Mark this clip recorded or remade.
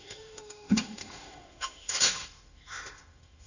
remade